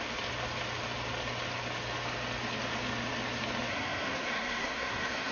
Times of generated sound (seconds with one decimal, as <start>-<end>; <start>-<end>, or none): 3.7-5.3